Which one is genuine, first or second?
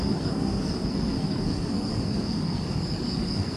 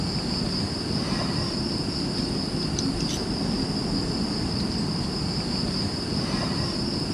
second